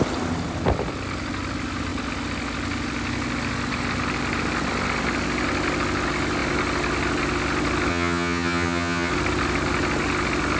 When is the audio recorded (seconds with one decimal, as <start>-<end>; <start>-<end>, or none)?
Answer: 0.0-7.9; 9.1-10.6